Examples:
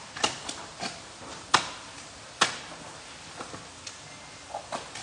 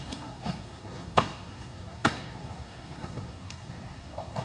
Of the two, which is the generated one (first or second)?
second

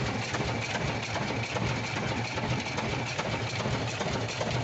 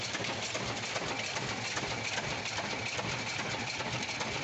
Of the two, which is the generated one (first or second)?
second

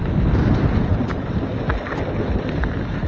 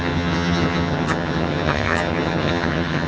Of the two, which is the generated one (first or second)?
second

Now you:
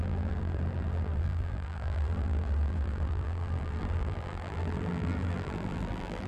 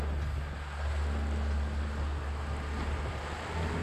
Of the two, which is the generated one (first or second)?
first